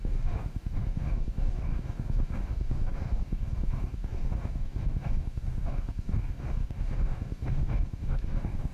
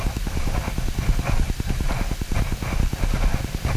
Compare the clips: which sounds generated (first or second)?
first